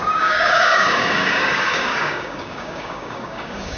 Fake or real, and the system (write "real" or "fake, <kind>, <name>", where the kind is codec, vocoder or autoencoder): fake, codec, DAC